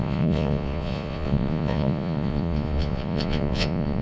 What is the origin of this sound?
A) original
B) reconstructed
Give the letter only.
B